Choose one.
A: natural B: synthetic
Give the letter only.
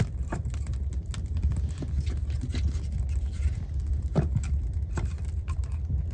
A